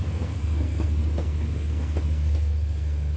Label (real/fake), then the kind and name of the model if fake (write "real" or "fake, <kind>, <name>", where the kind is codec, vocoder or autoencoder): fake, codec, SNAC